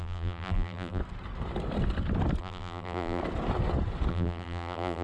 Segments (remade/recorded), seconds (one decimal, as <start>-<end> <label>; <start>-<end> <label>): 0.0-1.0 remade; 1.0-2.4 recorded; 2.4-3.2 remade; 3.2-4.1 recorded; 4.1-5.0 remade